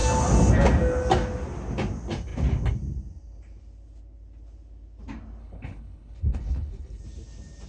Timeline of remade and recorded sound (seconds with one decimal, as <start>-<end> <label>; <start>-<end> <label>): 0.0-5.4 recorded; 5.4-7.0 remade; 7.0-7.7 recorded